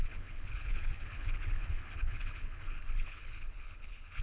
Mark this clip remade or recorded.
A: remade